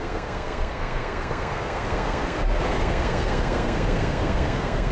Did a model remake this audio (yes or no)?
yes